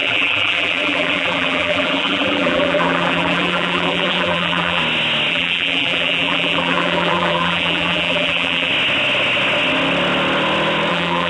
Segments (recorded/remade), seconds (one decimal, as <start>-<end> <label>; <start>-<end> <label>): 0.0-4.8 remade; 4.8-5.3 recorded; 5.3-8.7 remade; 8.7-10.9 recorded; 10.9-11.3 remade